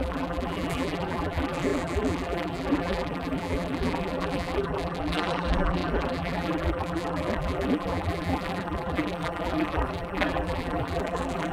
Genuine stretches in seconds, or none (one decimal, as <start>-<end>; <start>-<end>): none